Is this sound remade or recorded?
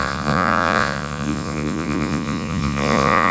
remade